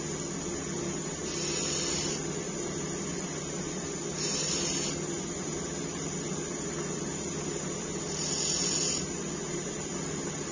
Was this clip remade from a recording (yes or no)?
no